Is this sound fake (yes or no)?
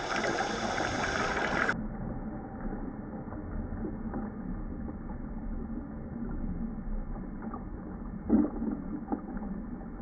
no